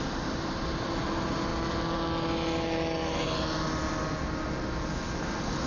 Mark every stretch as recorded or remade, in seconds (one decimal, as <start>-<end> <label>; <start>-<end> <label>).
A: 0.0-5.7 recorded